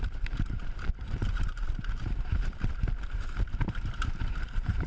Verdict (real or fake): fake